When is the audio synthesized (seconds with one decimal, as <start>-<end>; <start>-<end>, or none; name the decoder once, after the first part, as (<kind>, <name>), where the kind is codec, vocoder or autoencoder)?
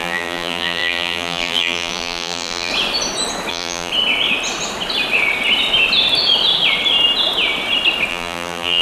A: 0.0-2.7 (vocoder, BigVGAN v2); 3.5-3.9; 8.1-8.8